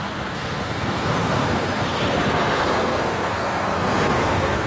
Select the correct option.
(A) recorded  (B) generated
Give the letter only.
B